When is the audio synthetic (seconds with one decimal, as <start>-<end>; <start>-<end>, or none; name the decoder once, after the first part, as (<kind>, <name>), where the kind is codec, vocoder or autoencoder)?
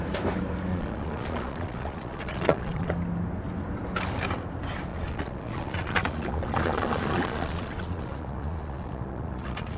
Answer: 0.7-2.9 (vocoder, Vocos); 4.9-9.8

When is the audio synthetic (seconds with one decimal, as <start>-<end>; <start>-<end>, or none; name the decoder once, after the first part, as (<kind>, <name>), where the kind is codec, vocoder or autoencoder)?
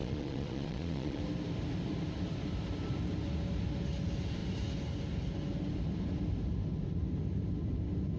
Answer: 0.0-1.2 (vocoder, Vocos)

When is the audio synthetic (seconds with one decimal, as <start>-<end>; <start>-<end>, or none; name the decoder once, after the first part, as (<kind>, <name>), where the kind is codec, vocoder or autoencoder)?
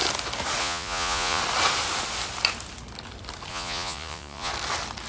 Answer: 0.6-1.4 (vocoder, Vocos); 3.5-4.5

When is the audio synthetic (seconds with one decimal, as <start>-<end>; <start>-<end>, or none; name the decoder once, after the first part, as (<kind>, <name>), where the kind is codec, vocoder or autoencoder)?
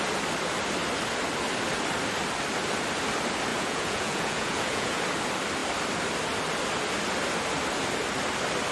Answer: 3.5-5.0 (vocoder, Vocos)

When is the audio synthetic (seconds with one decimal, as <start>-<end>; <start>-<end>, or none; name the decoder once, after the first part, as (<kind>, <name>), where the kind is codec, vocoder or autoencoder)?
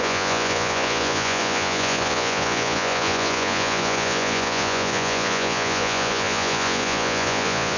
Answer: 0.0-7.8 (vocoder, Vocos)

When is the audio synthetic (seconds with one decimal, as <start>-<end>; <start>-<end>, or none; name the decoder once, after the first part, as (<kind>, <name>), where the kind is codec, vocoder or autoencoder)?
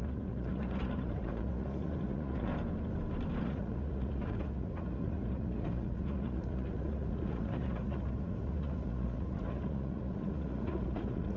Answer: 0.0-2.5 (vocoder, Vocos); 3.4-11.4